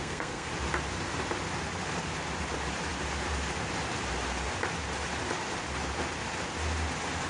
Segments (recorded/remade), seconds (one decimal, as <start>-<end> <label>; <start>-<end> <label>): 0.0-0.5 remade; 0.5-7.3 recorded